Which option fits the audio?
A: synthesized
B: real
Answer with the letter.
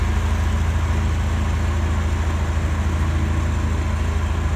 B